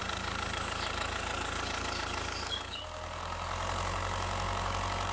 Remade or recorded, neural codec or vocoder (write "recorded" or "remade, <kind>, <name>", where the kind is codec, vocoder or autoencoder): remade, codec, DAC